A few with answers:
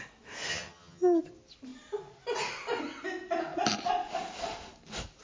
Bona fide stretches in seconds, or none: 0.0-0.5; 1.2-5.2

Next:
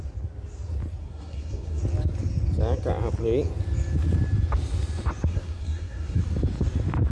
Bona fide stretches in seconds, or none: 0.0-1.0; 1.8-5.3; 6.2-7.1

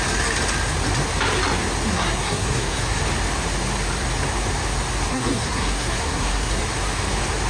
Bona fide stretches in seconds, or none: 0.0-1.9; 3.0-5.1; 6.6-7.5